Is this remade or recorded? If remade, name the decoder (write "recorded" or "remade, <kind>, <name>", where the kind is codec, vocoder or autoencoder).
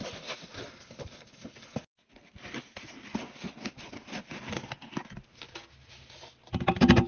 recorded